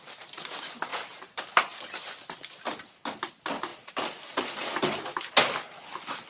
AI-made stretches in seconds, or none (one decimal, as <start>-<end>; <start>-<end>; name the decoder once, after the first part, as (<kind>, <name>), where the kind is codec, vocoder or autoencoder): none